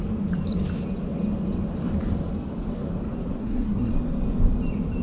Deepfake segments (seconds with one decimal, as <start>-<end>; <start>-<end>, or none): 3.4-3.9